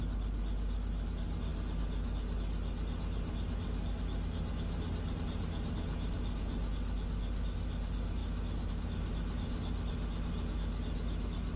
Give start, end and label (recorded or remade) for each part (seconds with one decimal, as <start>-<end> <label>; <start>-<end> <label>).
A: 0.0-11.6 recorded